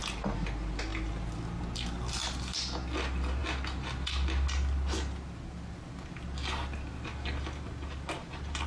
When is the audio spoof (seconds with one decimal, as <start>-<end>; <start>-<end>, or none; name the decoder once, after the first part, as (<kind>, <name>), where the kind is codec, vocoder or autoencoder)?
none